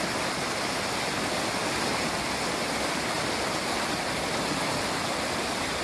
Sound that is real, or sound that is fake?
real